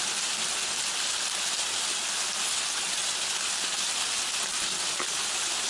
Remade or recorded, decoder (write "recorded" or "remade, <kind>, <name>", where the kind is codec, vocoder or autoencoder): recorded